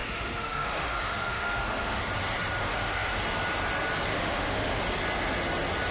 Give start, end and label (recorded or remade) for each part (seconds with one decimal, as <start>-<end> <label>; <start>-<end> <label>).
0.0-2.0 remade; 2.0-2.6 recorded; 2.6-3.2 remade; 3.2-4.1 recorded; 4.1-4.8 remade; 4.8-5.9 recorded